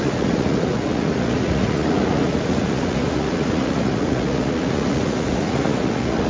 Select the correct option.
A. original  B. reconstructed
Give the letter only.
B